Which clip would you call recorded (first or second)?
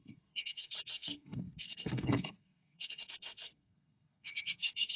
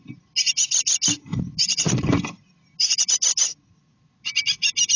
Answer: second